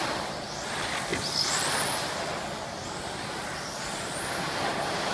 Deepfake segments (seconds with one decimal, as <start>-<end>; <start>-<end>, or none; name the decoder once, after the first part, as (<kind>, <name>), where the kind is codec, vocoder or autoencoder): none